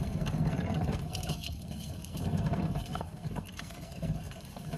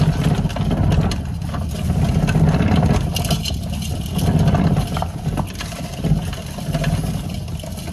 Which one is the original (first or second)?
second